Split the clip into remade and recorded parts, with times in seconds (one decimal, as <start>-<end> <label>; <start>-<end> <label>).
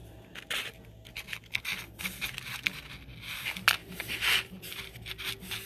0.0-3.8 recorded; 3.8-4.8 remade; 4.8-5.7 recorded